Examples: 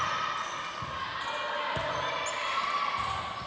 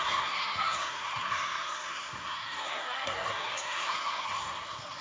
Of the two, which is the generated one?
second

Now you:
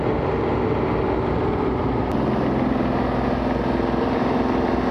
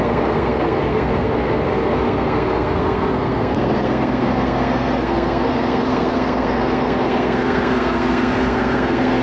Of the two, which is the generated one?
second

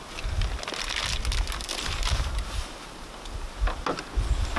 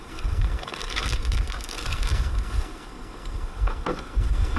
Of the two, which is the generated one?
second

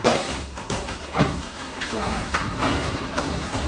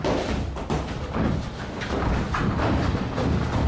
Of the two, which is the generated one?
first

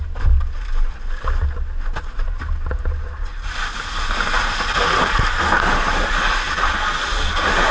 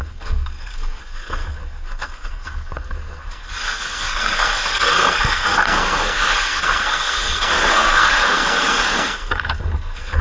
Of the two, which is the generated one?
second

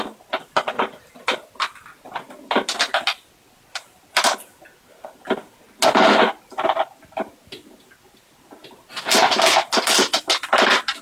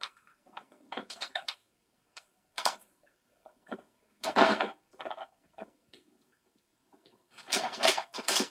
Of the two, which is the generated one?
second